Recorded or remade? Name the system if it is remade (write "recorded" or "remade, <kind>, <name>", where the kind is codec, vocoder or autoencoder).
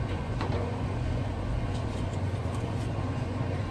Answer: remade, vocoder, Vocos